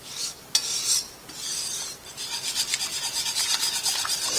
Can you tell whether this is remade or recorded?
recorded